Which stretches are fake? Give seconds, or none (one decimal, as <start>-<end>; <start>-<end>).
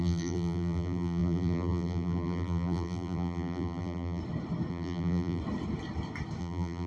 0.0-4.2; 4.7-5.4; 6.4-6.9